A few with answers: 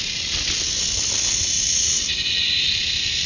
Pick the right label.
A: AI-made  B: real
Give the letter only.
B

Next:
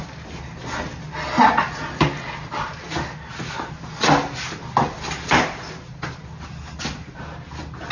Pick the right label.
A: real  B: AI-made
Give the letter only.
A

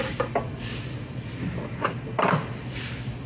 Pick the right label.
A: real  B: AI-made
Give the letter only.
B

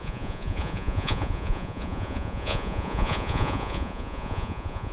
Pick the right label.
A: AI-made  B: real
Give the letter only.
A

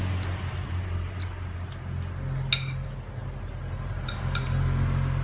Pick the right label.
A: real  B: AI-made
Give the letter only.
A